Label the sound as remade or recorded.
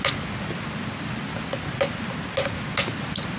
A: recorded